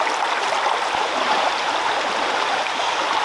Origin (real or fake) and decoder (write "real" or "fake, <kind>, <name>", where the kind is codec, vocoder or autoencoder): real